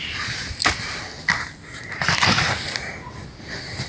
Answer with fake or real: real